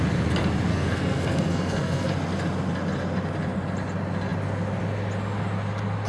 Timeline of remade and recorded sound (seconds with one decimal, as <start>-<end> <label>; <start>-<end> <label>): 0.0-0.7 recorded; 0.7-2.1 remade; 2.1-6.1 recorded